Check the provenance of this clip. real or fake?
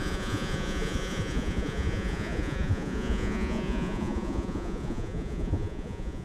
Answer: fake